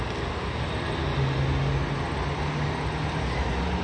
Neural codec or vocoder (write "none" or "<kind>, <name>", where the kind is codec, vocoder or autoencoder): none